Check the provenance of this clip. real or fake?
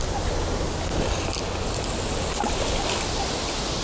real